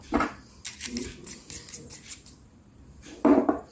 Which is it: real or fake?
real